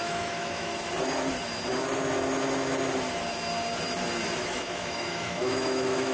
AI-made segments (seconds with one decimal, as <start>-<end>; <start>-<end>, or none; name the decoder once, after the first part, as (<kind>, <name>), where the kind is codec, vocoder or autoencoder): 0.0-0.7 (autoencoder, DAC-VAE); 4.4-6.1